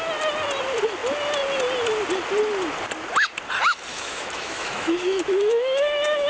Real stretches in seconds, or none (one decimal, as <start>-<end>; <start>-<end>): 0.0-3.9